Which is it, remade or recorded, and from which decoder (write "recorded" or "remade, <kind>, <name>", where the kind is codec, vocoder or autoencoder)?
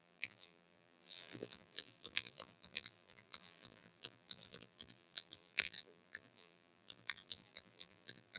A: remade, vocoder, BigVGAN v2